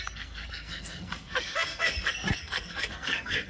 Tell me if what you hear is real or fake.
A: fake